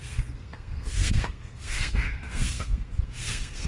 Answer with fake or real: fake